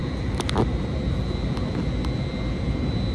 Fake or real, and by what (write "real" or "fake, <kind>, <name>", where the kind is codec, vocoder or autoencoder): real